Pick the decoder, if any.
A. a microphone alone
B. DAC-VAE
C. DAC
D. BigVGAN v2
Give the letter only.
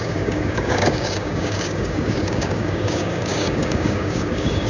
C